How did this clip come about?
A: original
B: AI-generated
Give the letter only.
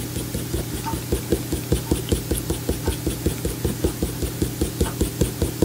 A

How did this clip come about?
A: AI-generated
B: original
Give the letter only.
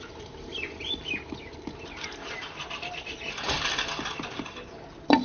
B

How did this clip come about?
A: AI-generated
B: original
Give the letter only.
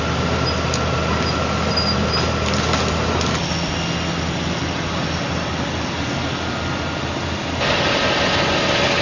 B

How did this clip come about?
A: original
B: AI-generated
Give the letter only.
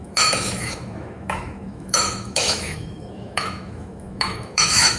B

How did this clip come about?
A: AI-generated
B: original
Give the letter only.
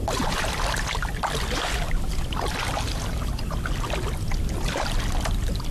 B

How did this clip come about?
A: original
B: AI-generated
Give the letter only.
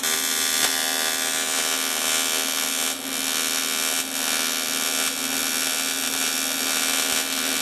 A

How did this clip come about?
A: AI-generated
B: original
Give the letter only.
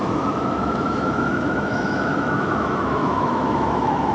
A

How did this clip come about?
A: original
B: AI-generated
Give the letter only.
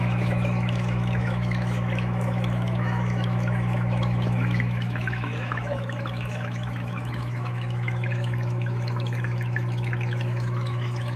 B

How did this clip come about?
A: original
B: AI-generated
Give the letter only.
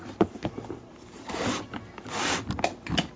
A